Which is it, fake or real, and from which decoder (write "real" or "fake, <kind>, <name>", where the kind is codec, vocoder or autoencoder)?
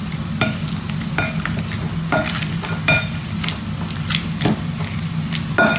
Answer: real